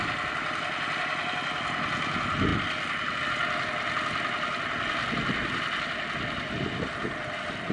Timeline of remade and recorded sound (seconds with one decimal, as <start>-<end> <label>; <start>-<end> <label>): 0.0-7.7 recorded